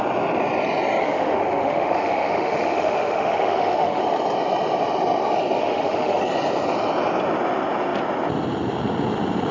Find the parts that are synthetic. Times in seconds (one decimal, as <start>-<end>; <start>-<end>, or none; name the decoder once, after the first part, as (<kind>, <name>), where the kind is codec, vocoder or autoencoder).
1.0-4.0 (autoencoder, DAC-VAE); 5.6-6.2